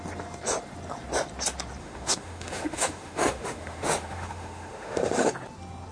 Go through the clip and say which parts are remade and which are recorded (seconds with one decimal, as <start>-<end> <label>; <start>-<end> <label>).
0.0-1.8 recorded; 1.8-5.3 remade; 5.3-5.9 recorded